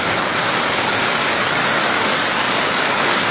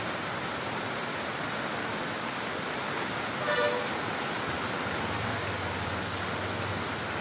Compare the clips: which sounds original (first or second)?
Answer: second